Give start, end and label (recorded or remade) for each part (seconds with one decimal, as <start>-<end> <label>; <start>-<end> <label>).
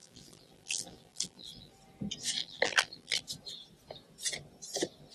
0.0-1.7 remade; 1.7-2.4 recorded; 2.4-3.2 remade; 3.2-5.1 recorded